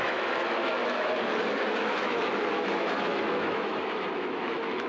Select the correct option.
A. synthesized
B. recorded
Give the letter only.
A